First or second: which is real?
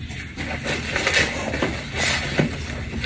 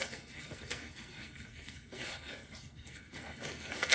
first